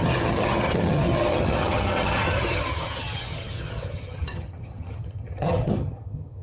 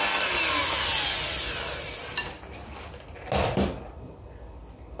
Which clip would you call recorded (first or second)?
second